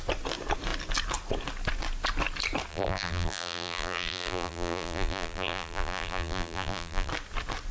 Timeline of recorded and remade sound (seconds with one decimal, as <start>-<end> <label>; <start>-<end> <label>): 0.0-2.7 recorded; 2.7-7.1 remade; 7.1-7.7 recorded